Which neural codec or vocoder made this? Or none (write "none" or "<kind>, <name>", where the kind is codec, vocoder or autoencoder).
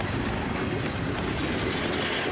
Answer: none